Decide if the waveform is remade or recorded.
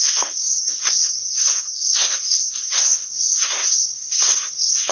remade